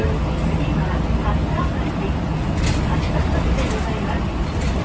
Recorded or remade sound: recorded